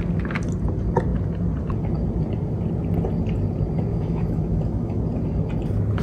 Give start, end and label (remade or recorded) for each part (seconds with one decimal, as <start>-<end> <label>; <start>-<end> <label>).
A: 0.0-3.9 recorded; 3.9-5.0 remade; 5.0-6.0 recorded